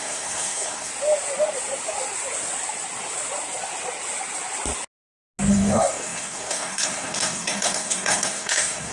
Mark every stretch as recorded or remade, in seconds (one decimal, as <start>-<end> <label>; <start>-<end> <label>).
0.0-0.9 remade; 0.9-5.5 recorded; 5.5-8.9 remade